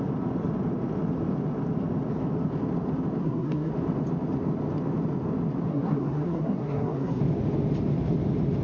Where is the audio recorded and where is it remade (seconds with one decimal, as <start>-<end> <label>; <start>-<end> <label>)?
0.0-3.2 recorded; 3.2-3.7 remade; 3.7-5.7 recorded; 5.7-7.2 remade; 7.2-8.6 recorded